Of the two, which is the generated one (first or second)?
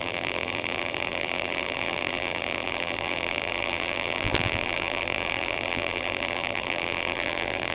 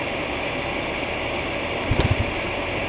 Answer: first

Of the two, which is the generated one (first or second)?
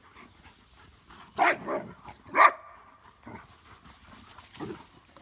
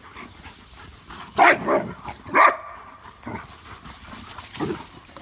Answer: second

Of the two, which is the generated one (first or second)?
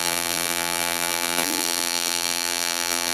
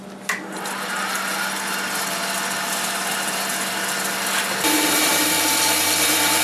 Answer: first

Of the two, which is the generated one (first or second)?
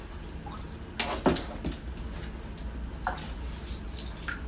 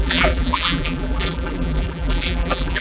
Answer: second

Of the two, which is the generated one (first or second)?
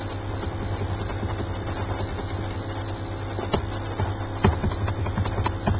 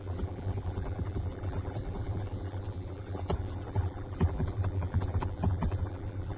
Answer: second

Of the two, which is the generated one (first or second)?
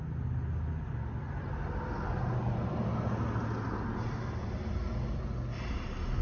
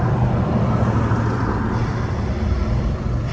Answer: second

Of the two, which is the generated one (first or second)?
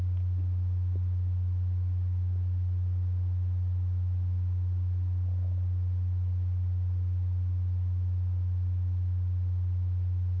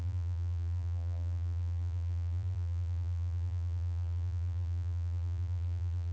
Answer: second